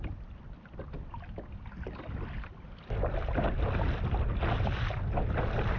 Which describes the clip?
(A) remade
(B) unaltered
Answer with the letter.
B